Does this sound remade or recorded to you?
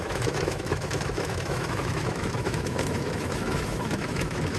remade